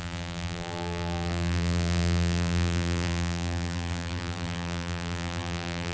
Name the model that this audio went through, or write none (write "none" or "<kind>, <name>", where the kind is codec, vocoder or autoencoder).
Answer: vocoder, BigVGAN v2